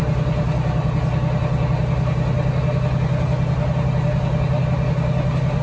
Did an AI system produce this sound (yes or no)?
no